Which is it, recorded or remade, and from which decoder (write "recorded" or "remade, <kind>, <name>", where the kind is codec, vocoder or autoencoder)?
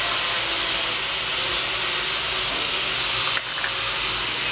recorded